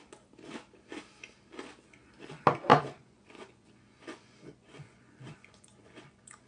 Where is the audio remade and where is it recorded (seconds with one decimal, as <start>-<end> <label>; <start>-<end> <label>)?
0.0-2.7 recorded; 2.7-6.5 remade